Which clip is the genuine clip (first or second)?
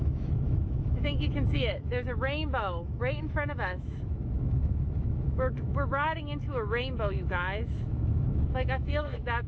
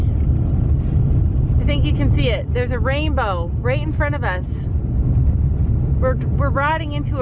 second